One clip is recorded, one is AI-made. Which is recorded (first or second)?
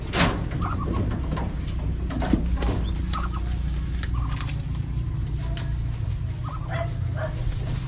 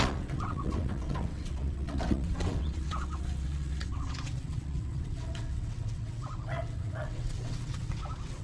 first